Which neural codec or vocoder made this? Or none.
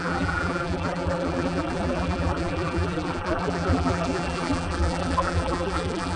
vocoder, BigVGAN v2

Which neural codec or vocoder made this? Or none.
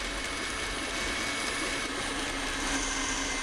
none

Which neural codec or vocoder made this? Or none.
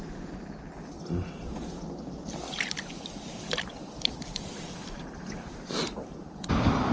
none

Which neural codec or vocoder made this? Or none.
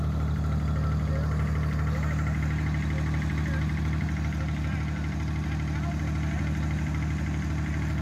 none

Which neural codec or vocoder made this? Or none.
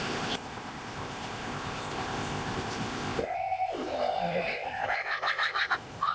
codec, ZipCodec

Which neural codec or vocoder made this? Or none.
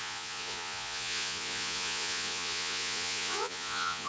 vocoder, Vocos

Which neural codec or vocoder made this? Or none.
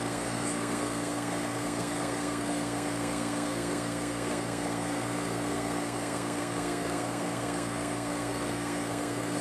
codec, SNAC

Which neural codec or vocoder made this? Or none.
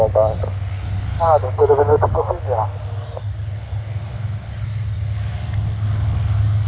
none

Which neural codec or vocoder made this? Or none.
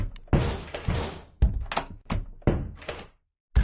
none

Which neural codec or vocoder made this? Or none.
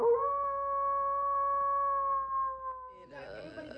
none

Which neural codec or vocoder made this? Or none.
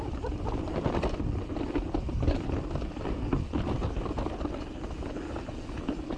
none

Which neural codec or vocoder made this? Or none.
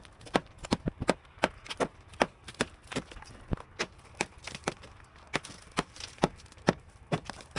none